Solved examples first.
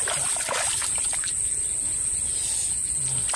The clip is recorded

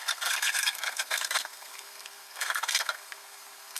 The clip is remade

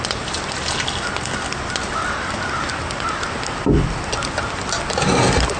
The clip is recorded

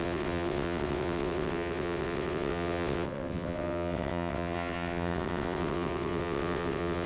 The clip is remade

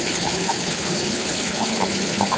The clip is remade